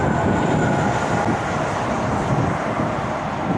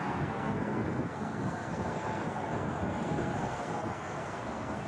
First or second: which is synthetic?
second